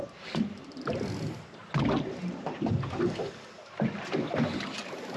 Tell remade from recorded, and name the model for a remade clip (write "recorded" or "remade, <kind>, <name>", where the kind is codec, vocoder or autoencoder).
recorded